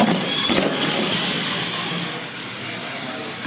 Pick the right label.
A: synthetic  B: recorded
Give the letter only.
B